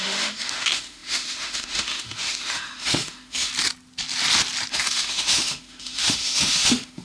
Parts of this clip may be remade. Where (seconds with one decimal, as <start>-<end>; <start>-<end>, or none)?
0.0-3.5; 4.7-7.0